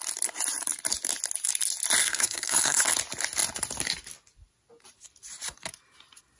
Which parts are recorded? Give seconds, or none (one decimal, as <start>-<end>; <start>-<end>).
0.0-2.0; 2.8-6.4